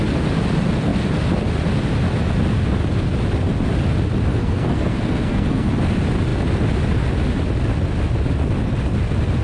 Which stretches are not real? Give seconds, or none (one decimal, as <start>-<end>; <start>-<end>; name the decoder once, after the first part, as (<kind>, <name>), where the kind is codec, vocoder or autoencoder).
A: 4.3-5.7 (codec, SNAC)